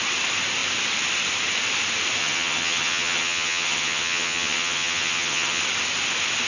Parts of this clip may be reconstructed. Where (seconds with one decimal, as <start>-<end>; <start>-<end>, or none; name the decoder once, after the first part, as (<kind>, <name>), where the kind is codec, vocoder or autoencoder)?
2.2-5.6 (vocoder, HiFi-GAN)